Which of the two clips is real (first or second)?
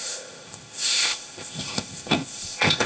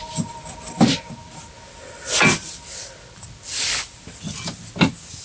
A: second